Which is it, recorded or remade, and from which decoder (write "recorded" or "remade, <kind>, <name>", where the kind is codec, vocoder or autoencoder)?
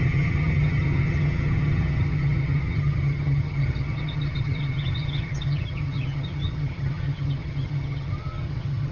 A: remade, vocoder, HiFi-GAN